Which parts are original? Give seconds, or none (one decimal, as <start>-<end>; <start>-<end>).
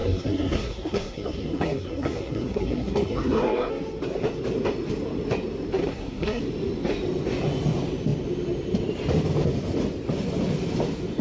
3.7-5.8; 6.4-11.2